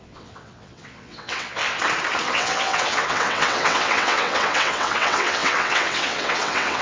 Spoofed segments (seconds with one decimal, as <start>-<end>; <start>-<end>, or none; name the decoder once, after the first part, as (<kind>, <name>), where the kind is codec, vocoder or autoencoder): 0.0-1.6 (vocoder, WaveNeXt); 2.3-6.8